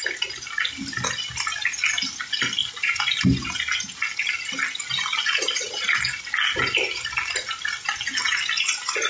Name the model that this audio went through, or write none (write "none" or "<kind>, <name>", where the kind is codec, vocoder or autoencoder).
none